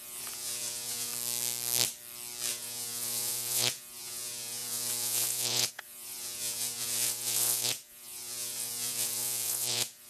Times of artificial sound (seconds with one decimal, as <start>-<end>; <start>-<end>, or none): 0.0-1.1; 2.5-10.1